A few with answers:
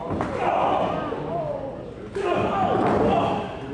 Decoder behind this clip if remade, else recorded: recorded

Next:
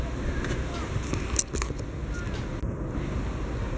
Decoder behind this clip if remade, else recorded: recorded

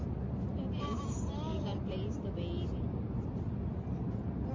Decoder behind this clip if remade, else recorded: recorded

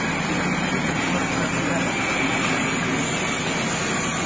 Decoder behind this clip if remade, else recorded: recorded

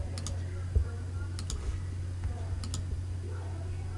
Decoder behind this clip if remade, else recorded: recorded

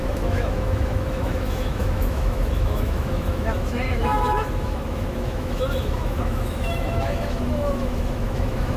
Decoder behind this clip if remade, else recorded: remade, autoencoder, DAC-VAE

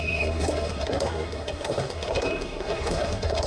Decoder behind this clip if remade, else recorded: remade, codec, SNAC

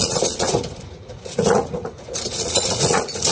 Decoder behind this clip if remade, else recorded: remade, vocoder, Vocos